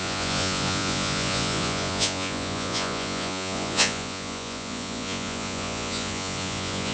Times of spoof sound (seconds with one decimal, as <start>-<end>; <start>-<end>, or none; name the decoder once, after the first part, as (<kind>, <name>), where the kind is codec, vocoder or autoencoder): 0.0-6.9 (vocoder, Vocos)